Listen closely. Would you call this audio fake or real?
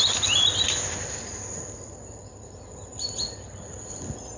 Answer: real